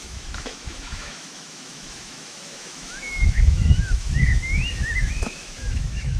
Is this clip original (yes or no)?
no